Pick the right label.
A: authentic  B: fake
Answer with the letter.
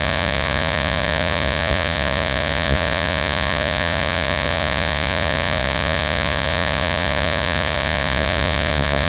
B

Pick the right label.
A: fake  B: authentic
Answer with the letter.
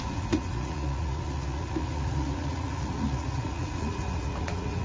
A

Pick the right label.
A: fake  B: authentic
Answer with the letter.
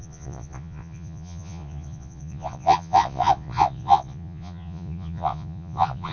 A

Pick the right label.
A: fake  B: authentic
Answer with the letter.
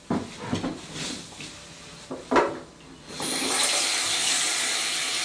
B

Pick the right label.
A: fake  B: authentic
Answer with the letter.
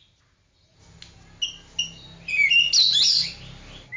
B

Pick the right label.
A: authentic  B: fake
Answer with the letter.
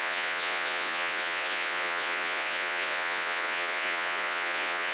B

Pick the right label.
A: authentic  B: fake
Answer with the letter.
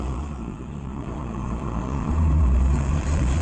B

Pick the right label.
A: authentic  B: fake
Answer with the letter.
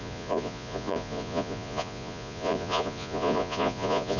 B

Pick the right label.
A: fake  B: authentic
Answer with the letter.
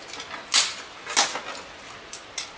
B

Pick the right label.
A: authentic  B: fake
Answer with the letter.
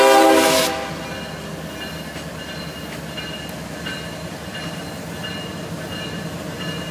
A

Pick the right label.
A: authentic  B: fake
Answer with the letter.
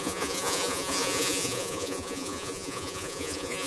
B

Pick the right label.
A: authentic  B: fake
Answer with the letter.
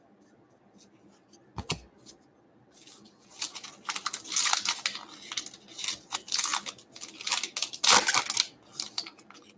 A